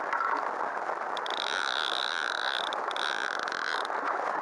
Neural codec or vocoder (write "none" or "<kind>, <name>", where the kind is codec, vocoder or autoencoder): none